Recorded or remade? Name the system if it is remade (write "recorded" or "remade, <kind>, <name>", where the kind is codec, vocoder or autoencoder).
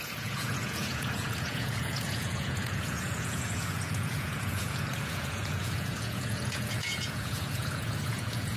remade, vocoder, Vocos